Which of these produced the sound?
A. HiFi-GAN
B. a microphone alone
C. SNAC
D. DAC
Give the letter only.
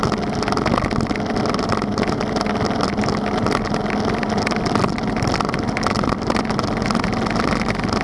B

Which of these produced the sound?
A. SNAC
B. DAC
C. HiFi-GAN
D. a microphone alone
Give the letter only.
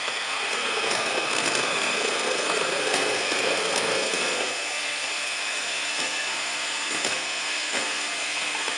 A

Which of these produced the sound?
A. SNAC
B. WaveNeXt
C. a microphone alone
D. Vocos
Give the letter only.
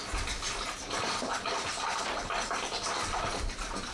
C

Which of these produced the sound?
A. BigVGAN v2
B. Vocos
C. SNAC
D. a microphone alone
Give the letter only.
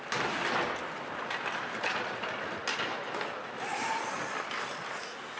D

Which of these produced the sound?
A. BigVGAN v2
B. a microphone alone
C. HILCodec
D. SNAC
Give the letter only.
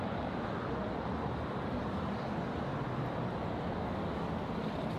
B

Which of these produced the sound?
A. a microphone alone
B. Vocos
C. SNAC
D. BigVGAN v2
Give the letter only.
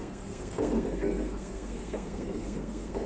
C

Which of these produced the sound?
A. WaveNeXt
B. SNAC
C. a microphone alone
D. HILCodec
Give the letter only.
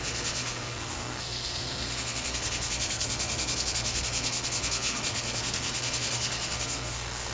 B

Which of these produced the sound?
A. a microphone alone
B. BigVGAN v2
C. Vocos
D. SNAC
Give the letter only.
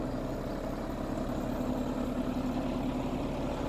A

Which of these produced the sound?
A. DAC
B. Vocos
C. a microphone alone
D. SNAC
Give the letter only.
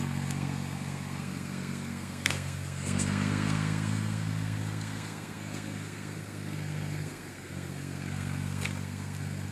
D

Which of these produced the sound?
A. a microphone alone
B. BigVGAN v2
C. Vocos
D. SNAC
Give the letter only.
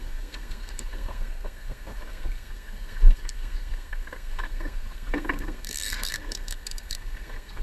D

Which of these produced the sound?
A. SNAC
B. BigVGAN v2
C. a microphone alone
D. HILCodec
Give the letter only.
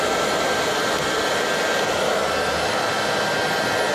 C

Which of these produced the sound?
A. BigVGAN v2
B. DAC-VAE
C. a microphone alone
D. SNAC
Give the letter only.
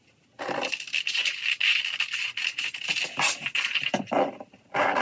C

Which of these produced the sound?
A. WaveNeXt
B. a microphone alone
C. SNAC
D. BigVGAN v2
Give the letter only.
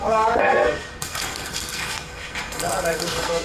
C